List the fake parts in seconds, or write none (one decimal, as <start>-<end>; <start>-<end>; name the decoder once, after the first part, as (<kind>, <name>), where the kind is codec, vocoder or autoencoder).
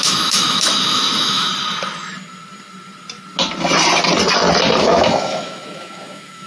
0.0-1.5 (autoencoder, DAC-VAE); 4.8-6.5